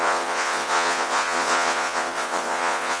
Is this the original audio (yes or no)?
no